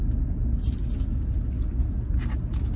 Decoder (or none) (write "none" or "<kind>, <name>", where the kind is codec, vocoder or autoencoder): none